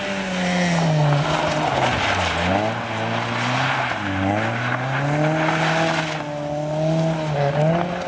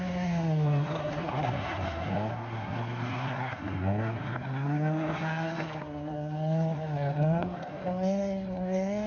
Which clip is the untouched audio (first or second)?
first